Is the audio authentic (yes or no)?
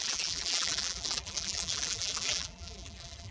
no